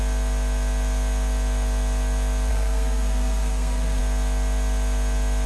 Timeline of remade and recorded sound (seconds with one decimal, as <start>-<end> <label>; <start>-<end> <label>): 0.0-2.5 recorded; 2.5-4.0 remade; 4.0-5.5 recorded